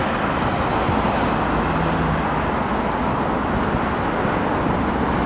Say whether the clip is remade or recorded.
recorded